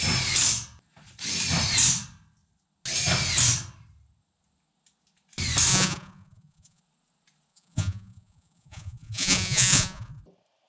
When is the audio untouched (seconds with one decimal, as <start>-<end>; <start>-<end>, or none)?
0.0-5.7; 6.8-7.5; 10.2-10.7